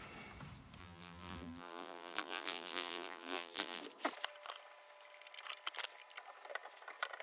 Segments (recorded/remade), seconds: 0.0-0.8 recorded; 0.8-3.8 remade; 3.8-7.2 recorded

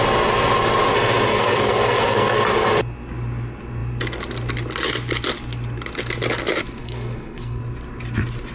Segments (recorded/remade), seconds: 0.0-1.3 recorded; 1.3-2.4 remade; 2.4-6.8 recorded; 6.8-7.6 remade; 7.6-8.5 recorded

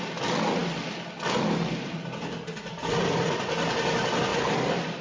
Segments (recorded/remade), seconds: 0.0-4.3 recorded; 4.3-5.0 remade

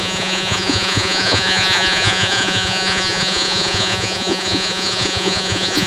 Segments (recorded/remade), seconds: 0.0-5.9 remade